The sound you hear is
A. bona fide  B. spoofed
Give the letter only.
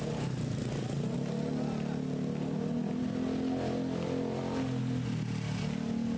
A